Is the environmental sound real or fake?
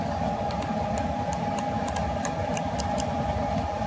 real